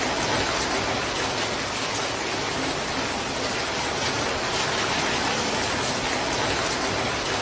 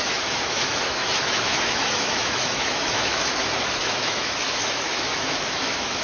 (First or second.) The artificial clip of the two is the second